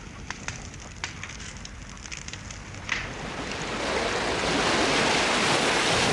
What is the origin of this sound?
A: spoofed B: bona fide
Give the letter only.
B